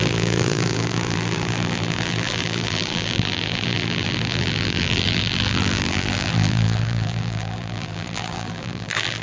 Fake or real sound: fake